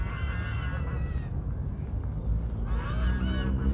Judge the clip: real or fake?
real